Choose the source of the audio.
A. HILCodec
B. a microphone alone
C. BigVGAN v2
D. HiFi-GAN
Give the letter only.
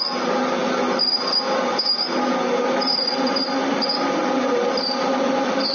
B